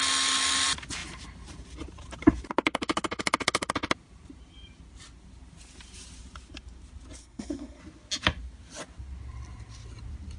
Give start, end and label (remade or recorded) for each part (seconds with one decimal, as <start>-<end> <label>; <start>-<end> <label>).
0.0-7.2 recorded; 7.2-7.8 remade; 7.8-10.4 recorded